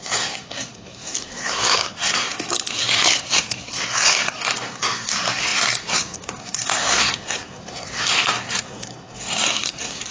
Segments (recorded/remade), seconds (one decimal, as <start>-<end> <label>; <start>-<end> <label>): 0.0-10.1 remade